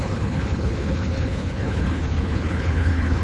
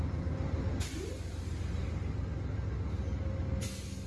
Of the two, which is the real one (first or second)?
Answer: second